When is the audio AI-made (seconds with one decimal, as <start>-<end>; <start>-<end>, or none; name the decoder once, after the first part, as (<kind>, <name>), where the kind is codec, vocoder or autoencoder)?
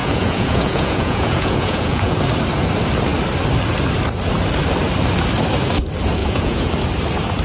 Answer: 0.0-2.1 (vocoder, Vocos); 6.2-6.7